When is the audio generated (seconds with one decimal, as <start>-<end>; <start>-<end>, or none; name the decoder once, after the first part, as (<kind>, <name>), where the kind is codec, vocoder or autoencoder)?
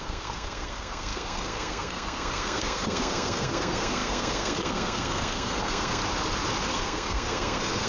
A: 0.0-6.0 (codec, SNAC); 6.7-7.9